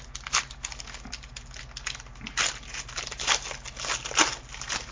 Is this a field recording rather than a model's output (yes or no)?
yes